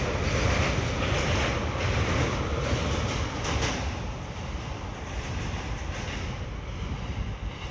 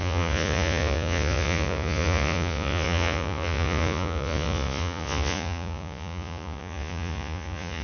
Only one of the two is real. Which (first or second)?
first